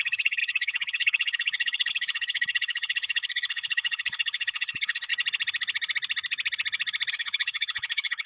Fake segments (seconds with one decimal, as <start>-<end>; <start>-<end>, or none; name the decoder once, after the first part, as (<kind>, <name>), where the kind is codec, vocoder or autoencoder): 0.0-5.1 (codec, HILCodec); 7.1-8.3